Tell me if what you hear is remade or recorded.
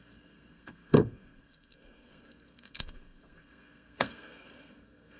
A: remade